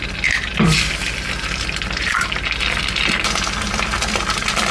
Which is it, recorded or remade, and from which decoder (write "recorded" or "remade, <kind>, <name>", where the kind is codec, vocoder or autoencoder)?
recorded